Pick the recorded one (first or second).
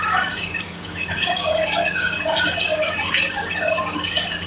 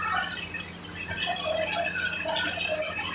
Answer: second